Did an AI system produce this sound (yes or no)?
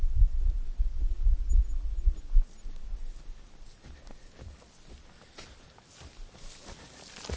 no